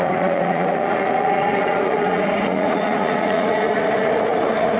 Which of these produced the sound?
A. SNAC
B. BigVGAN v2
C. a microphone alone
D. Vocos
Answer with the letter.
D